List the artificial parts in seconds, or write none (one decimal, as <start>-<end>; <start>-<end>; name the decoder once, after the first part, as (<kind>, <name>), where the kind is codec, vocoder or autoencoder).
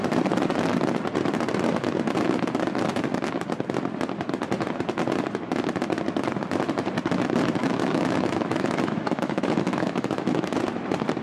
7.6-10.6 (autoencoder, DAC-VAE)